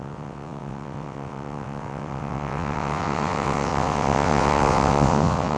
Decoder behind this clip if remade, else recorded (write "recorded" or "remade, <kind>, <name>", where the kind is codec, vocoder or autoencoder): remade, vocoder, WaveNeXt